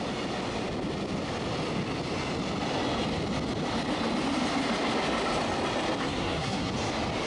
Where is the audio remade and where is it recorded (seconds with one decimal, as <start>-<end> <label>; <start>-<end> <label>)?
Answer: 0.0-6.0 recorded; 6.0-6.7 remade; 6.7-7.3 recorded